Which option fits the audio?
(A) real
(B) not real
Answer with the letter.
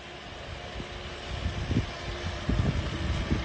A